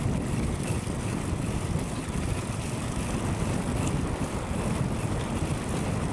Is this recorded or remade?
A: remade